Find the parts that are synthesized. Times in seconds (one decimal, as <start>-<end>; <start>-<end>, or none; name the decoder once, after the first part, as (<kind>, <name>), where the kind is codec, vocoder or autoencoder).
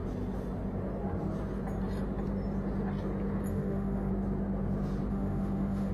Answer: 3.5-4.1 (autoencoder, DAC-VAE); 5.1-5.9